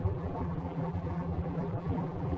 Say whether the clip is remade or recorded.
remade